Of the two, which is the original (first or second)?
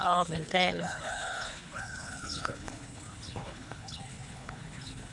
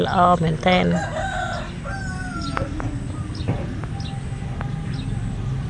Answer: second